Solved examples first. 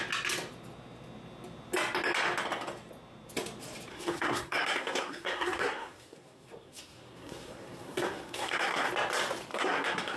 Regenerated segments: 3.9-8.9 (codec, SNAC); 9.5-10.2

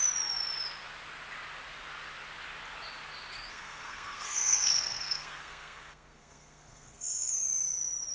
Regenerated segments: 3.5-7.4 (codec, SNAC)

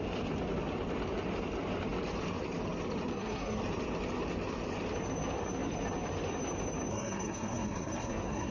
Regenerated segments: 3.1-3.6 (codec, SNAC); 6.9-8.5

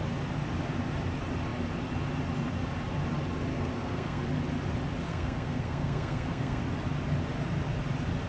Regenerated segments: 3.5-4.2 (codec, SNAC); 5.1-6.6

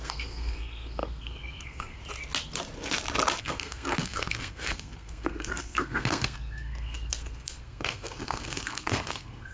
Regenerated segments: 0.0-2.0 (codec, SNAC); 3.4-9.5

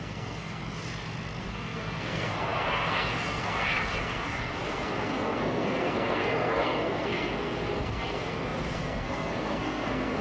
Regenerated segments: 0.0-0.6 (codec, SNAC); 1.4-10.2

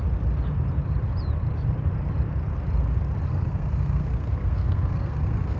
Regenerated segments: 3.3-5.6 (codec, SNAC)